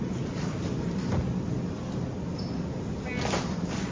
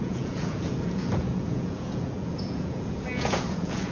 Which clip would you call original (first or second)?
first